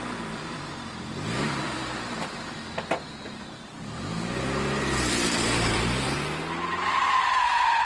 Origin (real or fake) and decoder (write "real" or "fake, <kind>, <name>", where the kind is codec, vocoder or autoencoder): fake, vocoder, BigVGAN v2